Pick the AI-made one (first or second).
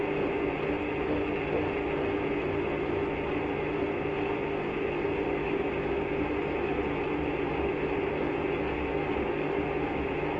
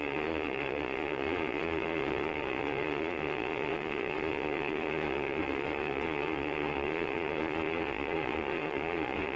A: second